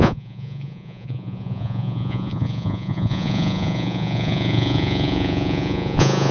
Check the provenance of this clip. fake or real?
fake